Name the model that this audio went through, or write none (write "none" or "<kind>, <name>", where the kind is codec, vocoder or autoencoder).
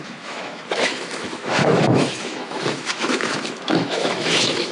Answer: autoencoder, DAC-VAE